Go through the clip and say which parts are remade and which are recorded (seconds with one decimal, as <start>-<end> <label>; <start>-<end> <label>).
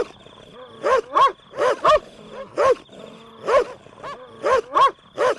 0.0-5.4 recorded